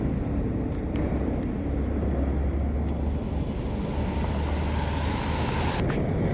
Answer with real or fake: real